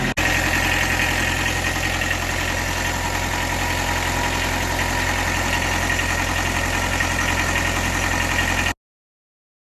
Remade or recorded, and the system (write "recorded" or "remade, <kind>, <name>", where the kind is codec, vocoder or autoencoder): recorded